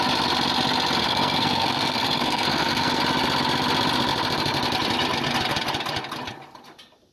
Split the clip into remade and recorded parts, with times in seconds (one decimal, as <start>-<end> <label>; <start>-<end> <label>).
0.0-1.0 recorded; 1.0-3.0 remade; 3.0-7.1 recorded